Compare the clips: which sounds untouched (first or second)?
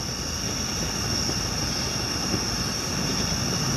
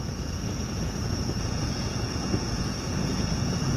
first